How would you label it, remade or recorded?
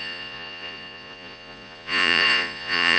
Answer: remade